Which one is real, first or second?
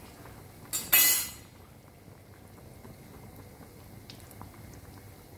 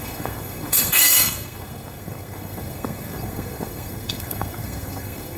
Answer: first